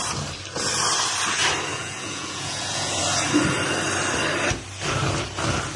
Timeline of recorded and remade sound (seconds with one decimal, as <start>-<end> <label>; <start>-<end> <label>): 0.0-1.7 recorded; 1.7-3.0 remade; 3.0-5.8 recorded

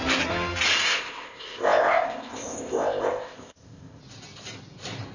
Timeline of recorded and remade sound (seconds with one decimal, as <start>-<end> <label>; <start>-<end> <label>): 0.0-0.9 recorded; 0.9-4.0 remade; 4.0-5.1 recorded

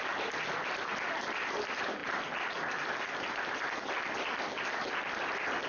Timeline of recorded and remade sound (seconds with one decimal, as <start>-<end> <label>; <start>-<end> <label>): 0.0-5.7 recorded

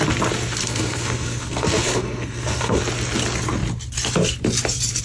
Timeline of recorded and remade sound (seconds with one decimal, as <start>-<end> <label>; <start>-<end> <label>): 0.0-0.6 recorded; 0.6-2.8 remade; 2.8-5.0 recorded

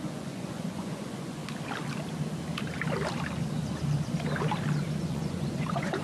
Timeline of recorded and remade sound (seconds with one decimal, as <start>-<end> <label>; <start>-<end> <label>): 0.0-1.4 remade; 1.4-5.0 recorded; 5.0-6.0 remade

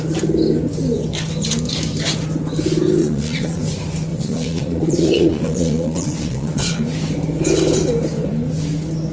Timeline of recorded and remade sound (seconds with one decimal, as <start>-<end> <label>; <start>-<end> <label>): 0.0-3.0 recorded; 3.0-3.6 remade; 3.6-4.1 recorded; 4.1-6.8 remade; 6.8-9.1 recorded

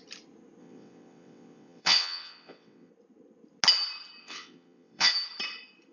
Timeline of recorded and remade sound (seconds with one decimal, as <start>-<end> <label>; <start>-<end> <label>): 0.0-0.6 recorded; 0.6-2.9 remade; 2.9-4.2 recorded; 4.2-5.1 remade; 5.1-5.9 recorded

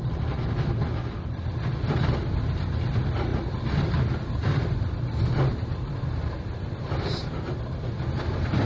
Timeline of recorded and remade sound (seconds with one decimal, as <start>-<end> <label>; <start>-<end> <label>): 0.0-8.7 recorded